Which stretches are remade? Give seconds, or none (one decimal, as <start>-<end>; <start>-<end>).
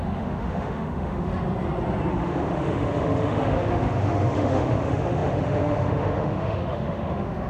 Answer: 0.0-1.3; 2.1-7.5